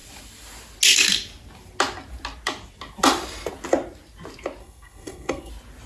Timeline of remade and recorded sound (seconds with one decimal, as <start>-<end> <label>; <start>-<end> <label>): 0.0-4.6 recorded; 4.6-5.5 remade; 5.5-5.9 recorded